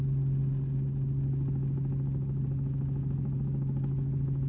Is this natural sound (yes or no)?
yes